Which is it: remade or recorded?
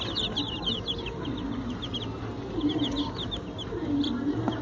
recorded